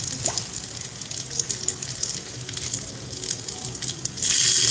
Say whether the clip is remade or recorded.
recorded